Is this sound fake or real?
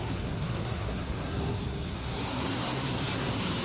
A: fake